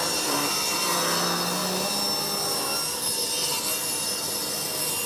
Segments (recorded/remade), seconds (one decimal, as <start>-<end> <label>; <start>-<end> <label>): 0.0-5.1 recorded